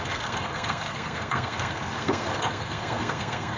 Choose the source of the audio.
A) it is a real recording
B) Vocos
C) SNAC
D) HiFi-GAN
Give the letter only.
C